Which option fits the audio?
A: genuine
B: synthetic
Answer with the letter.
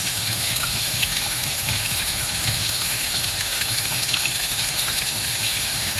B